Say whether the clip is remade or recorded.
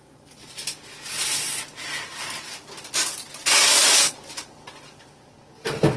recorded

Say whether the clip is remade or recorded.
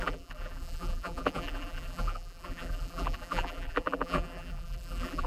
remade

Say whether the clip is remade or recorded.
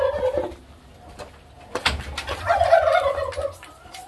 recorded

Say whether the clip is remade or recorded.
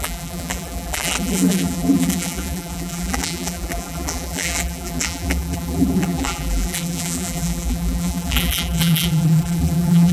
remade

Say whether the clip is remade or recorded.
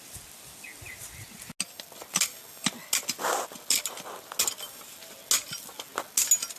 recorded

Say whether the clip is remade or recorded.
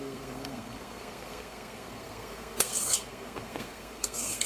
remade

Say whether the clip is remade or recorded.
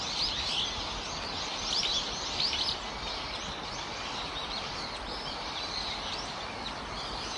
recorded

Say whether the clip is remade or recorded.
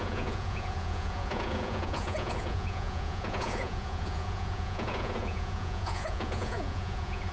remade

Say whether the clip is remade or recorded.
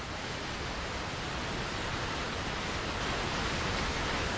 recorded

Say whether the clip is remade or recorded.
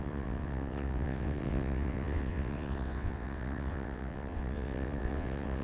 remade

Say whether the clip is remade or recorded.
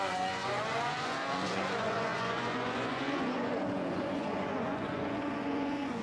remade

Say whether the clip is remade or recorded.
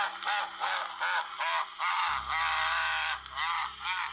recorded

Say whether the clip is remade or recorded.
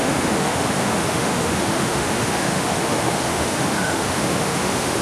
remade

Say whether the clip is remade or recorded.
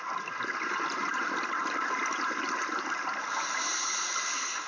recorded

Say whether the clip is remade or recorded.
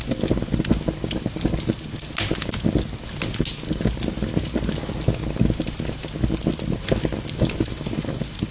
recorded